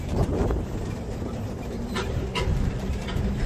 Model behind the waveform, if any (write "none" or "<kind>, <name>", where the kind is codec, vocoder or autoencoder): vocoder, BigVGAN v2